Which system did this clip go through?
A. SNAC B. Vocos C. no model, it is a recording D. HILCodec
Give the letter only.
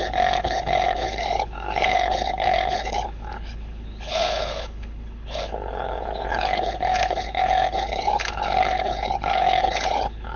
D